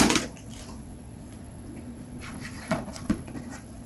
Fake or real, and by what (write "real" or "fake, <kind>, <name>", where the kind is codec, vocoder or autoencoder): fake, vocoder, Vocos